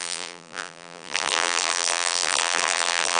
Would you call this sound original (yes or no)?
no